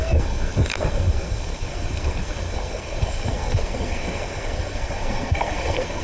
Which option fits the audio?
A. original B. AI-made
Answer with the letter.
B